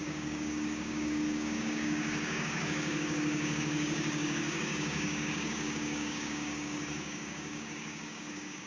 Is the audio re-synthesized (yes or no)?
yes